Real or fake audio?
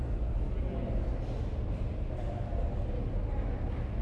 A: real